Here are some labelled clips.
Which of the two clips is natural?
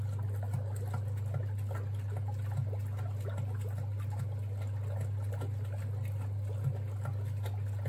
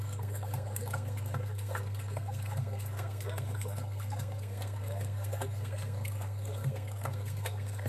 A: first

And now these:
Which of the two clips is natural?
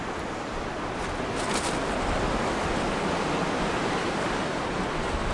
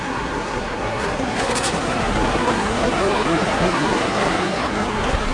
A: first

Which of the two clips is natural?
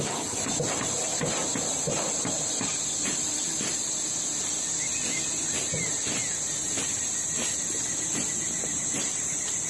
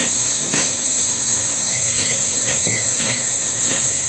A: first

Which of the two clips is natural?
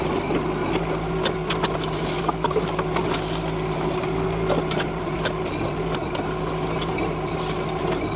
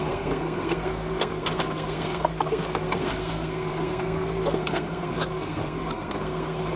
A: first